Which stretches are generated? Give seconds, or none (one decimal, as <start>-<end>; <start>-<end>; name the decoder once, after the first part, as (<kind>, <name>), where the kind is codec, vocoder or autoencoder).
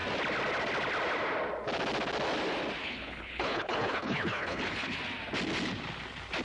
2.8-5.0 (codec, HILCodec)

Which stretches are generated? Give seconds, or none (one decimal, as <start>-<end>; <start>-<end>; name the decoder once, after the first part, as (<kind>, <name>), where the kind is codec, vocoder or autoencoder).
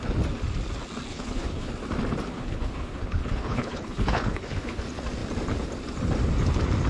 1.1-1.7 (codec, HILCodec); 2.3-4.8